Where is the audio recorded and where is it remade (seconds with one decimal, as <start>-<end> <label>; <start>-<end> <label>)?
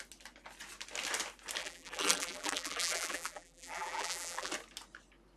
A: 0.0-1.6 recorded; 1.6-4.5 remade; 4.5-5.4 recorded